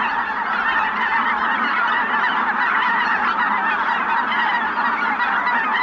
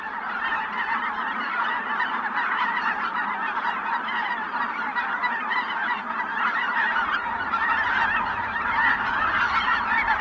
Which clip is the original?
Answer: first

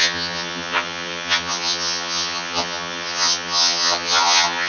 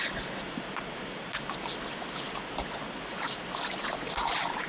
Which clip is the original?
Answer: second